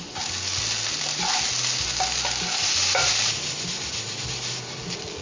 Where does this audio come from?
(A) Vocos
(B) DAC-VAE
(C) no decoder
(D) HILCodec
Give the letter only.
C